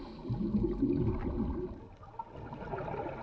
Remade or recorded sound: recorded